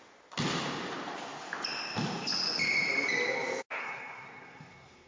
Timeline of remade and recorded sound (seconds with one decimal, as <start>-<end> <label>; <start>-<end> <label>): 0.0-3.8 recorded; 3.8-5.1 remade